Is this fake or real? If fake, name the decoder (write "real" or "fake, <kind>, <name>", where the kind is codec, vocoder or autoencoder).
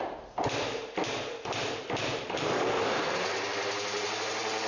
fake, vocoder, BigVGAN v2